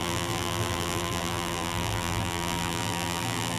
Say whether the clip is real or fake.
fake